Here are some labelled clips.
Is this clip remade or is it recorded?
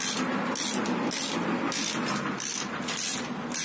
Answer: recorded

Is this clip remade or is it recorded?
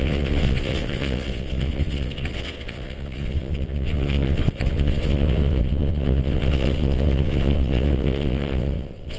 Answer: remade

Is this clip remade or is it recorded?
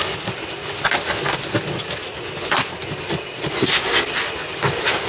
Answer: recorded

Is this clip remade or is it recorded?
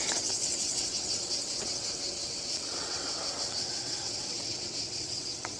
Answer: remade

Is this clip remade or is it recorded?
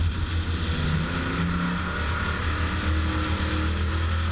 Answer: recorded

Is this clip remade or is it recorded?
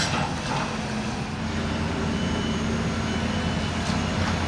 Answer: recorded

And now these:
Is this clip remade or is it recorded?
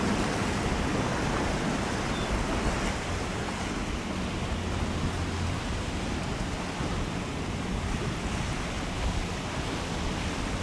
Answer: recorded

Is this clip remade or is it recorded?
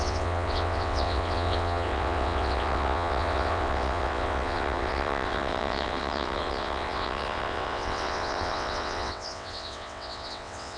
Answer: remade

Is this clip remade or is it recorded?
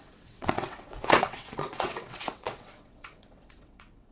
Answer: remade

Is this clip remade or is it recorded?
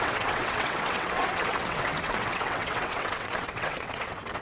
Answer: remade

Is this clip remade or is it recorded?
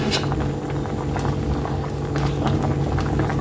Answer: recorded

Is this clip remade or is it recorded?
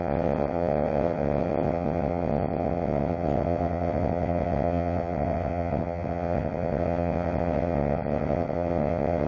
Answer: remade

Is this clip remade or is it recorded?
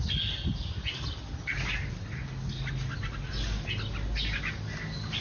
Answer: recorded